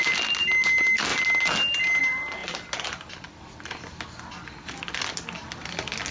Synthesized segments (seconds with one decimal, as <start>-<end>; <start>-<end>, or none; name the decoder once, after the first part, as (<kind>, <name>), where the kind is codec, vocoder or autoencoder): none